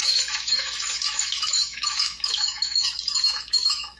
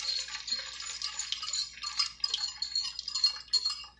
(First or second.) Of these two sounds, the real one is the second